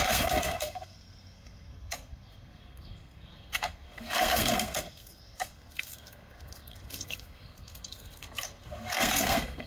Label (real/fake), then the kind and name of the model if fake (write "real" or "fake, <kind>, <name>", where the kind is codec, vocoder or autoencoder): fake, codec, SNAC